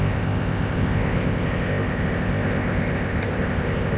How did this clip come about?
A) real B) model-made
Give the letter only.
B